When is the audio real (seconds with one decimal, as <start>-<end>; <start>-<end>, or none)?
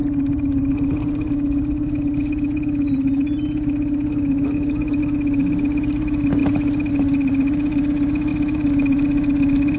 0.0-9.8